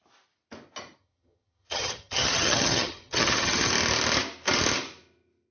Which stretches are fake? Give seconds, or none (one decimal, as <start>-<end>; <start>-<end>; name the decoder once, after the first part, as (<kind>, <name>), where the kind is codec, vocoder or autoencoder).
1.0-3.7 (vocoder, HiFi-GAN)